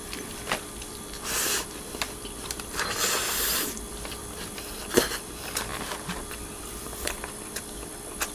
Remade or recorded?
remade